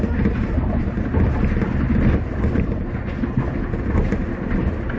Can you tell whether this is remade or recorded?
recorded